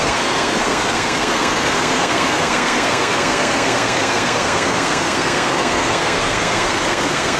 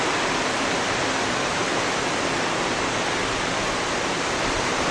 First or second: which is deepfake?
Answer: first